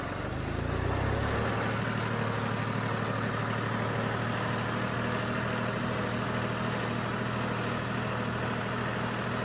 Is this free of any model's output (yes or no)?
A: yes